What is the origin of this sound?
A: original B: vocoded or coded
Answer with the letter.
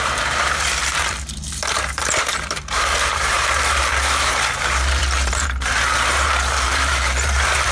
B